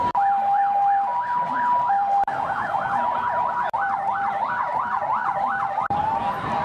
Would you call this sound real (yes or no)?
no